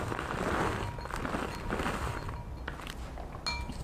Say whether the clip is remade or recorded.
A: recorded